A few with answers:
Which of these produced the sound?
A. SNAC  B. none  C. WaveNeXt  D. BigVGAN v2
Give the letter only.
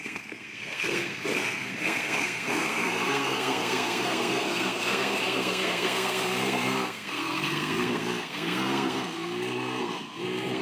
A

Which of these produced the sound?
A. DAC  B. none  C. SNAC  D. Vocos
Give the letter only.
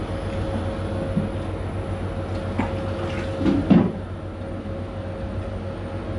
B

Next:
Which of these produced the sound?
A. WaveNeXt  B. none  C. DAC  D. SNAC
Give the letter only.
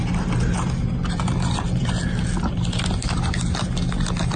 B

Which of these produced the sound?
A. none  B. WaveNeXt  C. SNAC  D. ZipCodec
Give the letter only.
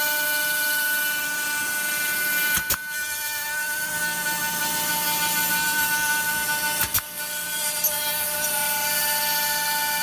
A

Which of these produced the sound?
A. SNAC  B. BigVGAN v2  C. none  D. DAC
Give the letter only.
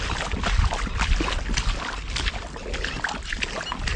C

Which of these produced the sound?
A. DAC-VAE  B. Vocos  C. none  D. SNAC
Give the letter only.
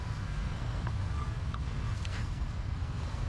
D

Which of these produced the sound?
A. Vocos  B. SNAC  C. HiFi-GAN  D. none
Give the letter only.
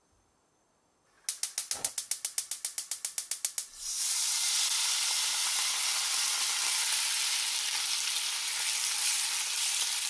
D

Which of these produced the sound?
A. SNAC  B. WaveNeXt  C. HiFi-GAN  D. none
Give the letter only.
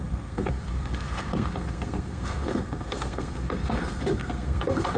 A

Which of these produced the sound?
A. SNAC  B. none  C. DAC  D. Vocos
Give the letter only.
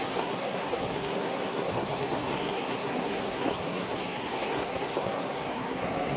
A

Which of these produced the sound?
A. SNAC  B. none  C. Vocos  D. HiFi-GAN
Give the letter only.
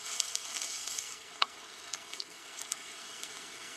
A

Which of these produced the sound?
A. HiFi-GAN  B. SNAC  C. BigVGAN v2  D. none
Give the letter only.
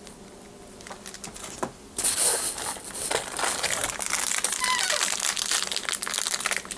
D